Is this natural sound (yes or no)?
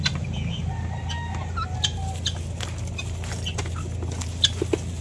yes